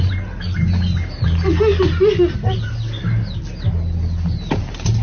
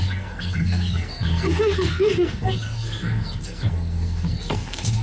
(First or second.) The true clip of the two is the first